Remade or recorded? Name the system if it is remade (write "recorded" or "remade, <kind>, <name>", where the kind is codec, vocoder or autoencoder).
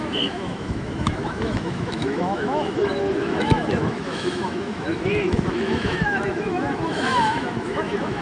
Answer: remade, autoencoder, DAC-VAE